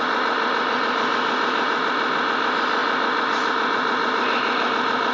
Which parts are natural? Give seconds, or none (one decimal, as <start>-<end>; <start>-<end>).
0.0-5.1

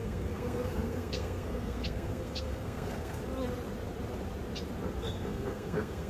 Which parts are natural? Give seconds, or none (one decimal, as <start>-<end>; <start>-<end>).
3.2-5.0

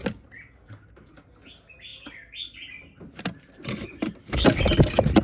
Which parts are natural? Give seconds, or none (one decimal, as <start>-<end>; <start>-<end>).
0.0-5.2

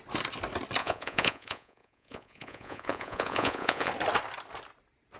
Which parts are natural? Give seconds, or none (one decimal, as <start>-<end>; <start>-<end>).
0.0-0.8; 3.9-5.2